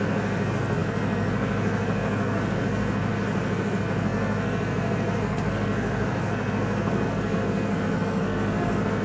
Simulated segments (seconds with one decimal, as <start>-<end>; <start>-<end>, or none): 0.0-9.0